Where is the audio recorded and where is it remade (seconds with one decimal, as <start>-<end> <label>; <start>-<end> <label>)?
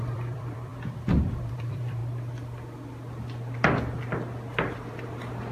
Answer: 0.0-2.0 remade; 2.0-5.5 recorded